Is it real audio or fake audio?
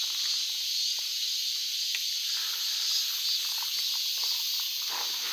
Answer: real